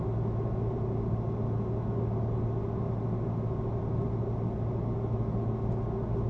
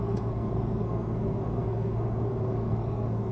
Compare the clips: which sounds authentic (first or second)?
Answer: first